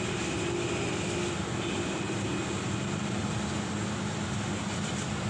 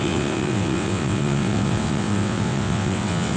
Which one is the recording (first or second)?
first